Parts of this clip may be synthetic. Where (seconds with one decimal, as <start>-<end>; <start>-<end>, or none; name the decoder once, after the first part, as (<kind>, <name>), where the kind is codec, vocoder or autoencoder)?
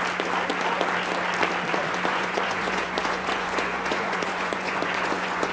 2.1-5.5 (vocoder, Vocos)